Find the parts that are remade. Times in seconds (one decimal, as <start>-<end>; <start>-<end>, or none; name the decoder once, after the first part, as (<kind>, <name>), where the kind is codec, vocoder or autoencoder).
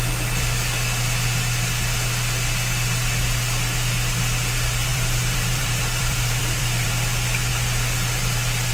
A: 4.9-6.9 (vocoder, BigVGAN v2)